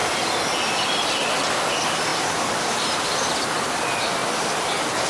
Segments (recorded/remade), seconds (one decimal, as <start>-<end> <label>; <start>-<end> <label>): 0.0-5.1 recorded

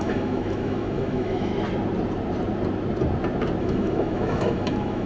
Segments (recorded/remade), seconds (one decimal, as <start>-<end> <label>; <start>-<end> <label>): 0.0-1.5 remade; 1.5-3.6 recorded; 3.6-5.1 remade

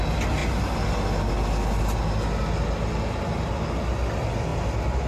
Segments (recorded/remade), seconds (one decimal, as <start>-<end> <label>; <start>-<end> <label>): 0.0-5.1 recorded

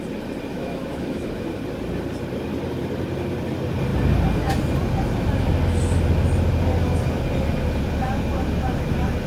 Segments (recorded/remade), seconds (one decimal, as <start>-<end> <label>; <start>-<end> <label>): 0.0-0.5 recorded; 0.5-1.6 remade; 1.6-9.3 recorded